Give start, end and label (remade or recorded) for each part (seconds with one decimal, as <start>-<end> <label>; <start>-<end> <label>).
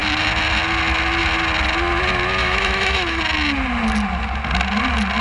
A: 0.0-2.4 recorded; 2.4-3.2 remade; 3.2-5.2 recorded